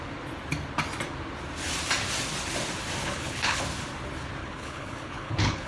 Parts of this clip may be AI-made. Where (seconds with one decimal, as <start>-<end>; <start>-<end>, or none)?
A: 3.0-3.6; 4.4-5.7